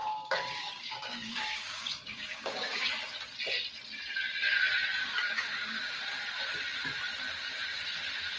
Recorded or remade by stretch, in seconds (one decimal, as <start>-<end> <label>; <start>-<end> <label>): 0.0-2.9 remade; 2.9-5.0 recorded; 5.0-6.0 remade; 6.0-8.4 recorded